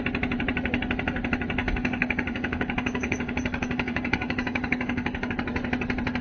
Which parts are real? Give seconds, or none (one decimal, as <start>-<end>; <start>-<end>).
0.0-1.6; 5.3-6.2